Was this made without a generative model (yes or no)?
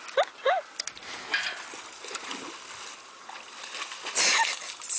yes